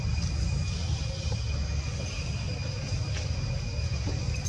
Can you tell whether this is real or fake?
real